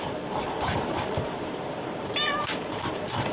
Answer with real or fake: fake